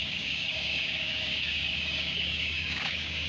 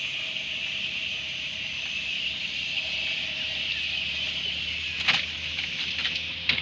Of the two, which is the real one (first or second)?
second